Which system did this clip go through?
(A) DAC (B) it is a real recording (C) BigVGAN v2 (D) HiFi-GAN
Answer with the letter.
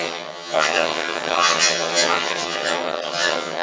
D